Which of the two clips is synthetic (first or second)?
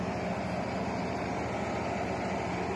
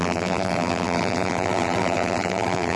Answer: second